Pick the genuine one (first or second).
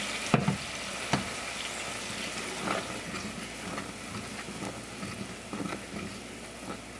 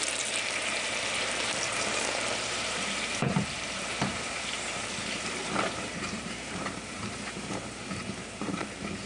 first